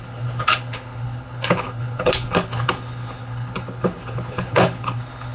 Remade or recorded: remade